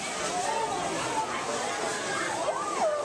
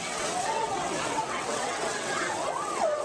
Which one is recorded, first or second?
first